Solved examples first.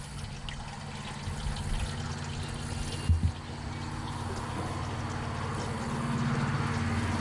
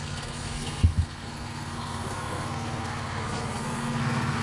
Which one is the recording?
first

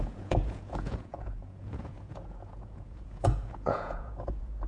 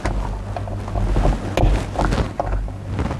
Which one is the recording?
second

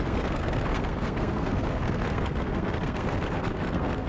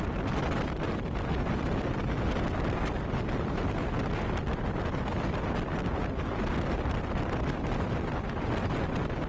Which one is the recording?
second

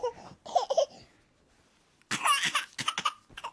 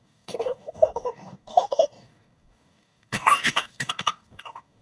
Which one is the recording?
first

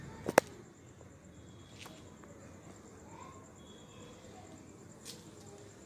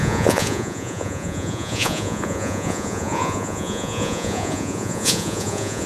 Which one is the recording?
first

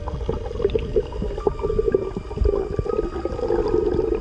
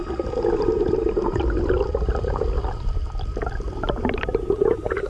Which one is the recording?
first